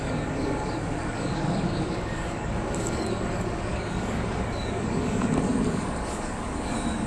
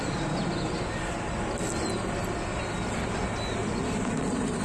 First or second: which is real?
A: second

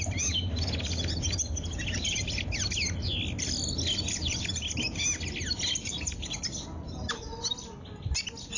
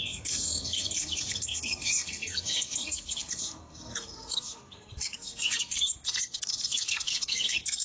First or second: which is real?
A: first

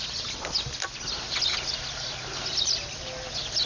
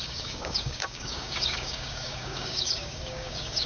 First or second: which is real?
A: first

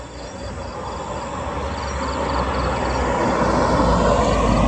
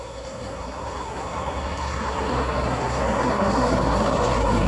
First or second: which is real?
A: first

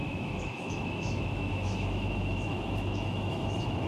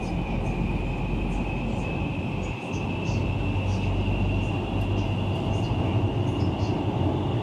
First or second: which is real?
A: second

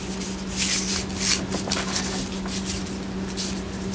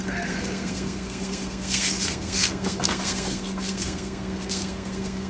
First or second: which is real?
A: first